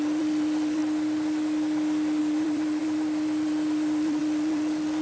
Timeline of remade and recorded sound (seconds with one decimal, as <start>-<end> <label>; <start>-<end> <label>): 0.0-0.8 remade; 0.8-2.2 recorded; 2.2-5.0 remade

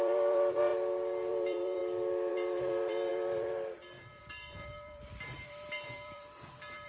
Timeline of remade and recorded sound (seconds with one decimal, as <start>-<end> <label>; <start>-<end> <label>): 0.0-0.7 remade; 0.7-1.3 recorded; 1.3-1.8 remade; 1.8-2.3 recorded; 2.3-6.9 remade

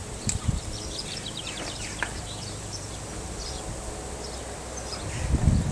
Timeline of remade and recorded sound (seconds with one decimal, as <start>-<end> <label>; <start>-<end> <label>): 0.0-3.4 remade; 3.4-5.7 recorded

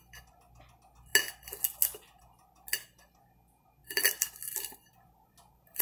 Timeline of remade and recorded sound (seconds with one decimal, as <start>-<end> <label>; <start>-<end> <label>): 0.0-3.8 recorded; 3.8-5.8 remade

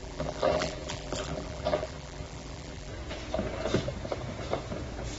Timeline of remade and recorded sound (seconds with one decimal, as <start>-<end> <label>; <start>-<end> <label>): 0.0-2.9 remade; 2.9-5.2 recorded

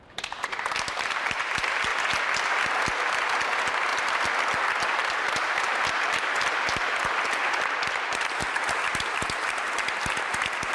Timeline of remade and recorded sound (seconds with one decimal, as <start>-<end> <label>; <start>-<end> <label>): 0.0-3.9 recorded; 3.9-5.8 remade; 5.8-10.7 recorded

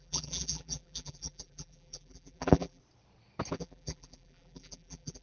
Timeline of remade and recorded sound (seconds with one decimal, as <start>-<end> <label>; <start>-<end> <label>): 0.0-2.8 remade; 2.8-3.5 recorded; 3.5-5.2 remade

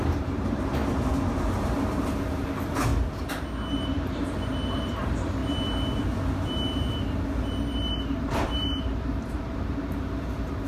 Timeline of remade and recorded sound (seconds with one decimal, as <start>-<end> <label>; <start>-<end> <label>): 0.0-0.8 remade; 0.8-2.0 recorded; 2.0-2.9 remade; 2.9-3.7 recorded; 3.7-5.4 remade; 5.4-7.4 recorded; 7.4-10.7 remade